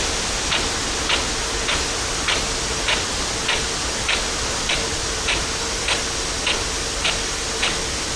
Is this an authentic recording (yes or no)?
yes